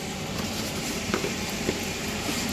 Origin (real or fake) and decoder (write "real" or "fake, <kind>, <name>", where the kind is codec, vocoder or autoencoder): fake, vocoder, BigVGAN v2